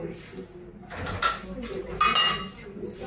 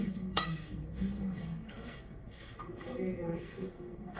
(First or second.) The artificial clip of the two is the second